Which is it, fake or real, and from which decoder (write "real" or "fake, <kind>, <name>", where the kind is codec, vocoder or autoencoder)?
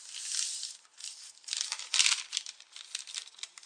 real